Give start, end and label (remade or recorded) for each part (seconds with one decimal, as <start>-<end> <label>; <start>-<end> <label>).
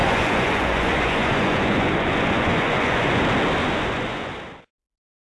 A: 0.0-3.2 remade; 3.2-3.6 recorded; 3.6-4.3 remade; 4.3-5.4 recorded